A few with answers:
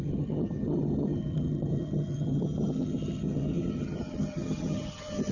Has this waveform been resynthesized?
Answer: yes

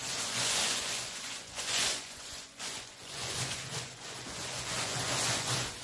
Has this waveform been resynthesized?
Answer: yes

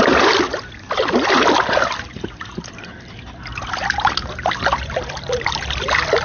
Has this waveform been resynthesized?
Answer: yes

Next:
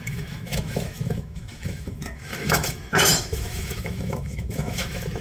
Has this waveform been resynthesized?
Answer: yes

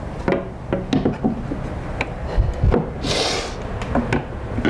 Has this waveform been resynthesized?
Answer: no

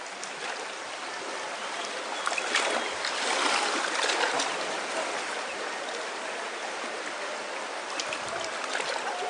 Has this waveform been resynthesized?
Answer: no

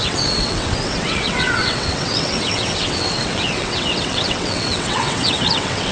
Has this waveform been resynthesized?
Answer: yes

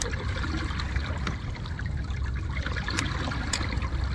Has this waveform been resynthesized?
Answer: yes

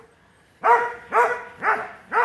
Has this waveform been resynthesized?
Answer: no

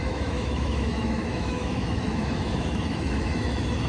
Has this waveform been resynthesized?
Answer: yes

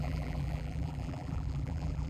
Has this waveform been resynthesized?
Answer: yes